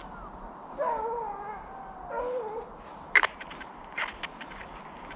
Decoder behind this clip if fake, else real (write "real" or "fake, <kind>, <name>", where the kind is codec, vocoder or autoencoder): real